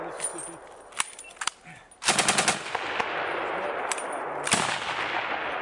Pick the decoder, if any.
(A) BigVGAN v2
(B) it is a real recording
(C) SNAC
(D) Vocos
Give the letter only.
B